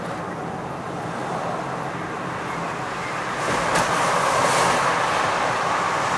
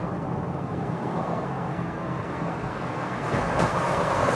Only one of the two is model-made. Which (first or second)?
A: second